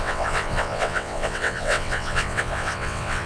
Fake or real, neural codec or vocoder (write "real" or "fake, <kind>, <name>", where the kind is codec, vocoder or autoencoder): fake, vocoder, WaveNeXt